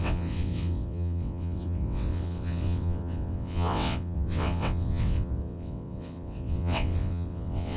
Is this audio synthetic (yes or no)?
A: yes